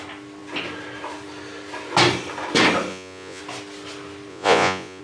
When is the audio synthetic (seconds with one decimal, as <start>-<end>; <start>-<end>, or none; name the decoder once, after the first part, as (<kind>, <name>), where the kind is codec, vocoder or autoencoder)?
2.9-3.4 (vocoder, Vocos); 4.3-5.0